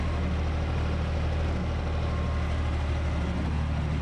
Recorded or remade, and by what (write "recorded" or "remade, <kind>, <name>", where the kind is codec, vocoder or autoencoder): recorded